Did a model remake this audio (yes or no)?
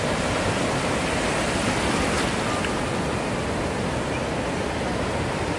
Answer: no